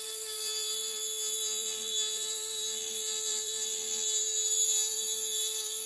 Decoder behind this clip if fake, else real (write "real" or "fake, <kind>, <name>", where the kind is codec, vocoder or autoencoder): fake, vocoder, BigVGAN v2